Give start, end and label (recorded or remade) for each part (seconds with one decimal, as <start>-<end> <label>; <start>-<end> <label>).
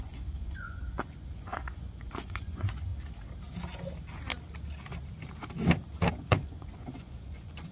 0.0-2.9 remade; 2.9-6.1 recorded; 6.1-7.7 remade